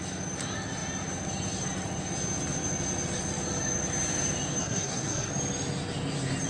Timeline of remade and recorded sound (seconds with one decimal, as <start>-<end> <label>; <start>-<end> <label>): 0.0-4.6 recorded; 4.6-5.3 remade; 5.3-6.5 recorded